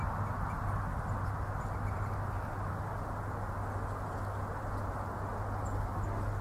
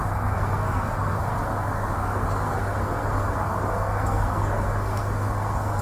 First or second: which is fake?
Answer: second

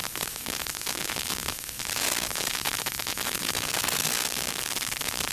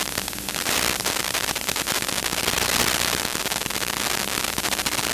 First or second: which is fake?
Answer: first